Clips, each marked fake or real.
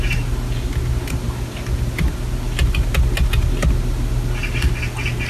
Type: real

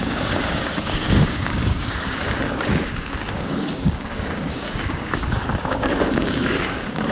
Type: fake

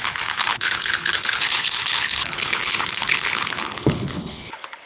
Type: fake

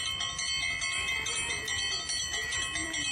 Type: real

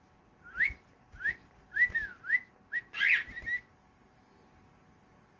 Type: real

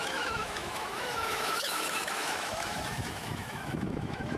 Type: fake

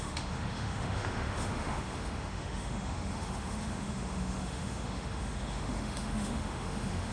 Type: fake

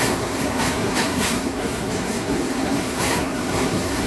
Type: fake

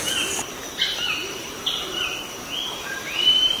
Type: real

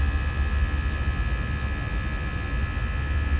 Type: real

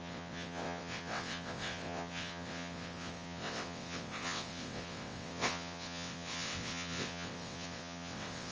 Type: fake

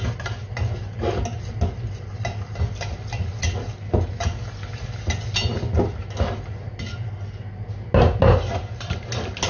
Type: real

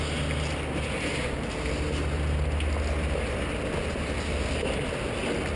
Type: real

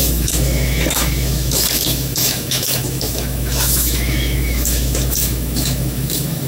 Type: fake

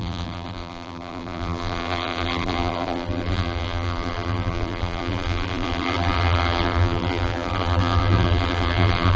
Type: fake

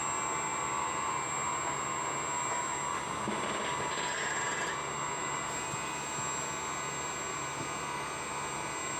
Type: real